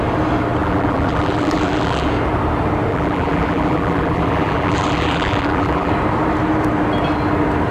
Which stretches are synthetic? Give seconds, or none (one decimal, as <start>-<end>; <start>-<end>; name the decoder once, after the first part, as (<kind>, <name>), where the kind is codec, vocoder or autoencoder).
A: 0.6-2.1 (vocoder, BigVGAN v2); 2.9-5.9